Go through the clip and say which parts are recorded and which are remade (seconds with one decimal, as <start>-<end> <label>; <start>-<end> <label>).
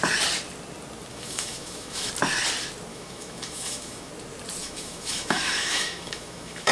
0.0-1.1 recorded; 1.1-2.1 remade; 2.1-2.9 recorded; 2.9-4.1 remade; 4.1-4.6 recorded; 4.6-6.7 remade